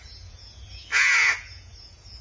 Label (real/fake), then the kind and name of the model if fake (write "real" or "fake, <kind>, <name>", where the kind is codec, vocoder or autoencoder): fake, vocoder, Vocos